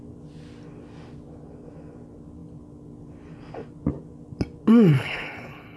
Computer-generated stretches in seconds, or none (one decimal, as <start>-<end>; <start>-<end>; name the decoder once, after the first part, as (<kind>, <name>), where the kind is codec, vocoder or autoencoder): 4.9-5.8 (codec, HILCodec)